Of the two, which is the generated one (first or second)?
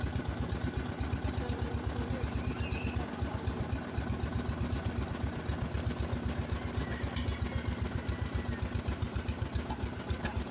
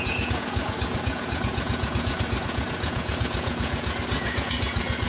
second